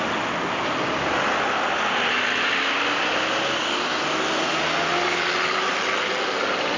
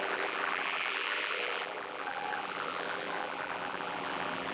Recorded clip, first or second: first